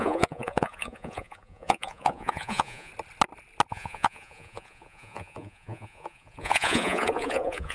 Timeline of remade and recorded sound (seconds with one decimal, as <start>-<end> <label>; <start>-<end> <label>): 0.0-2.9 remade; 2.9-3.7 recorded; 3.7-7.7 remade